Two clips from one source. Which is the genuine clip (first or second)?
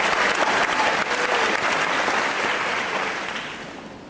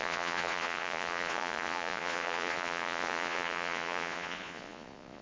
first